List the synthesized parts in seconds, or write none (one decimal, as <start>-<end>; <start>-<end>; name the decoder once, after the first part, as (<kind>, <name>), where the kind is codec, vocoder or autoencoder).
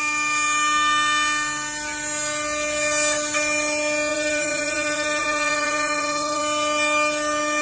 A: 4.1-6.4 (vocoder, Vocos)